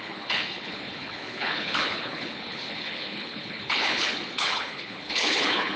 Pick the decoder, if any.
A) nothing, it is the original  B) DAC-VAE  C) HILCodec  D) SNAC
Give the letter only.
C